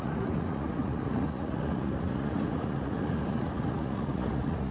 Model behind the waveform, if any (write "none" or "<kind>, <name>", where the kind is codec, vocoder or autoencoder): vocoder, Vocos